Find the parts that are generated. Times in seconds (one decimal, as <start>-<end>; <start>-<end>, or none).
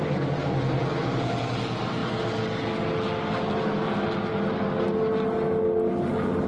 none